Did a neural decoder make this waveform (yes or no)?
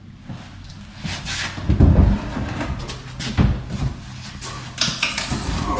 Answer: no